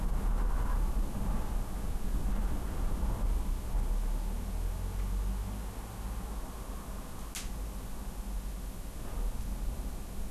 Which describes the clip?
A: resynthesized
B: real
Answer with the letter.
B